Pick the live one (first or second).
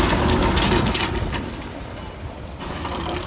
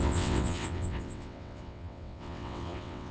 first